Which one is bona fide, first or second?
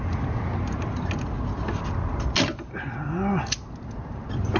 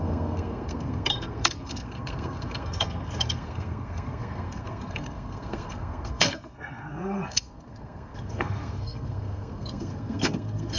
first